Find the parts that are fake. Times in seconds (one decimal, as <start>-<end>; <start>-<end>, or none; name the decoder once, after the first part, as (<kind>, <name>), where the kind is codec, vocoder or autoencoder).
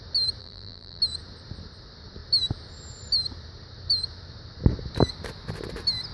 0.4-1.0 (vocoder, BigVGAN v2)